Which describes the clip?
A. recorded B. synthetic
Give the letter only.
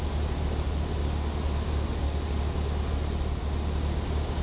A